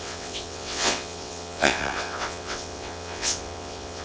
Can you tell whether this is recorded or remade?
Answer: remade